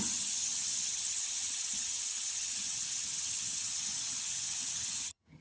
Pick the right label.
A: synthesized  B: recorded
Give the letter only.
A